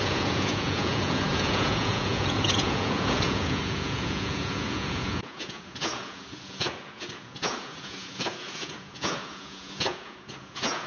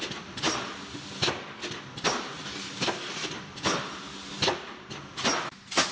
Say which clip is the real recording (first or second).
second